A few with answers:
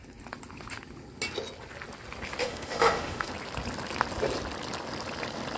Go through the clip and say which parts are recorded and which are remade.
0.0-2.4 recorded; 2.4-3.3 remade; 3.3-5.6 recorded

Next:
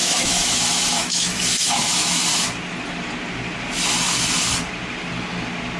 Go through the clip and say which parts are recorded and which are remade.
0.0-0.6 remade; 0.6-1.0 recorded; 1.0-2.2 remade; 2.2-5.8 recorded

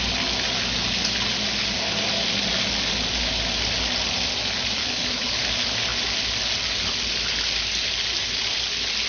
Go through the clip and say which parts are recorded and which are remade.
0.0-4.8 recorded; 4.8-5.4 remade; 5.4-9.1 recorded

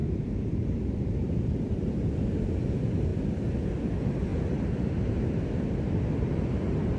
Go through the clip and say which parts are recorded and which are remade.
0.0-1.3 remade; 1.3-4.3 recorded; 4.3-5.9 remade; 5.9-7.0 recorded

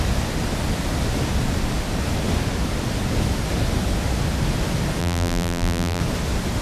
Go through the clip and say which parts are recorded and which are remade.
0.0-5.0 recorded; 5.0-6.0 remade; 6.0-6.6 recorded